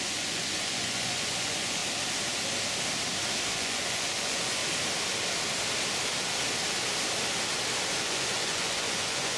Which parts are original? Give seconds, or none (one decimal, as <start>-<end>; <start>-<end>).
1.8-3.5; 4.6-7.9